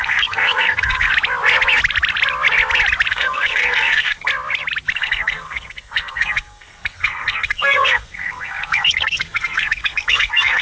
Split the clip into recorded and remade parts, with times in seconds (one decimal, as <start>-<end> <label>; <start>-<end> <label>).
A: 0.0-1.1 remade; 1.1-3.1 recorded; 3.1-4.3 remade; 4.3-4.9 recorded; 4.9-10.6 remade